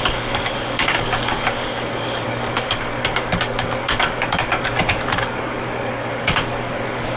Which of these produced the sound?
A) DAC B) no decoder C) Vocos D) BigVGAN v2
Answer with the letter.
A